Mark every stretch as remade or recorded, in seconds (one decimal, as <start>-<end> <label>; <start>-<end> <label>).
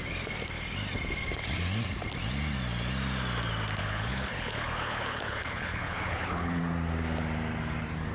0.0-3.8 recorded; 3.8-6.6 remade; 6.6-8.1 recorded